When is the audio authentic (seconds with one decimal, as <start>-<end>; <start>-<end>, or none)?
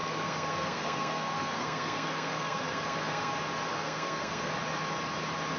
3.3-3.7; 4.5-5.6